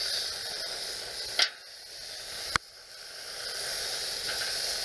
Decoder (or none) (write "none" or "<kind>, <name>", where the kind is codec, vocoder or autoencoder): none